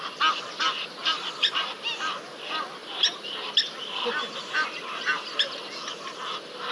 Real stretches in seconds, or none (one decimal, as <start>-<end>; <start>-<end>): 0.0-1.0; 1.9-2.8; 3.5-6.7